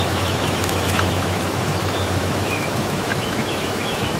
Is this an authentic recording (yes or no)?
no